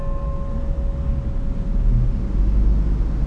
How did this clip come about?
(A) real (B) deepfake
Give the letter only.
A